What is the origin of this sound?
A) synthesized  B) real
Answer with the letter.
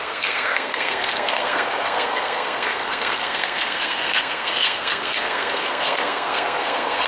A